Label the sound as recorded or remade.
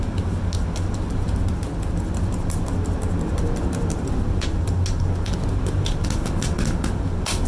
recorded